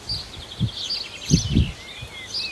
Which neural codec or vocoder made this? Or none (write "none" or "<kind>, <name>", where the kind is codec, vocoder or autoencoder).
none